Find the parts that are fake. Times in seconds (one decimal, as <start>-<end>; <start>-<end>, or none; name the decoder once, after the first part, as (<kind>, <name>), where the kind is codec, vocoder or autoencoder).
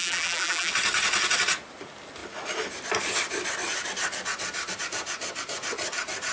0.0-0.7 (vocoder, BigVGAN v2)